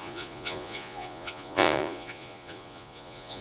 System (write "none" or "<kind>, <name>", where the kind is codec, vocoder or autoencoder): vocoder, Vocos